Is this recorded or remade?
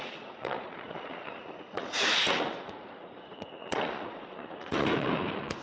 remade